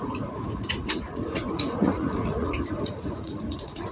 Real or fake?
fake